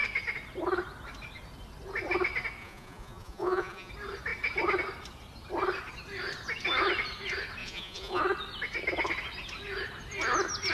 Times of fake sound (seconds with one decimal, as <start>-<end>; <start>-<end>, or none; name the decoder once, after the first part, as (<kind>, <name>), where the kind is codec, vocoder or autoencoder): 2.6-3.9 (vocoder, Vocos); 7.6-8.2